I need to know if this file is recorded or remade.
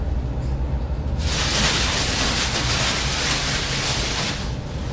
recorded